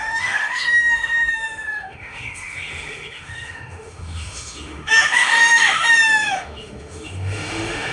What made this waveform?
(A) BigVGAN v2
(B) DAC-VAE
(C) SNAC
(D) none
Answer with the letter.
B